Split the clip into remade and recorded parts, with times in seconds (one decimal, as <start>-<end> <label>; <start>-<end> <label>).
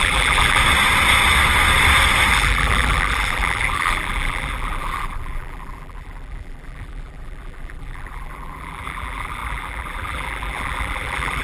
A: 0.0-0.6 remade; 0.6-2.3 recorded; 2.3-11.4 remade